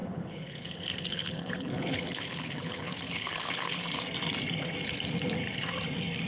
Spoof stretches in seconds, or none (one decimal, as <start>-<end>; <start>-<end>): 0.0-3.8